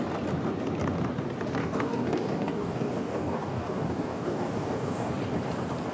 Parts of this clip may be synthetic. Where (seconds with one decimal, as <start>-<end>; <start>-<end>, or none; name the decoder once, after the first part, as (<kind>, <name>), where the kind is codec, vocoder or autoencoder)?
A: 1.6-5.1 (codec, DAC)